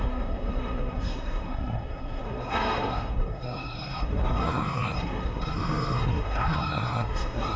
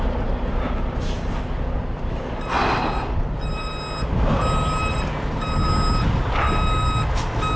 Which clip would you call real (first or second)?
second